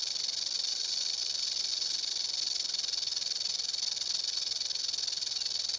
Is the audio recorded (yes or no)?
yes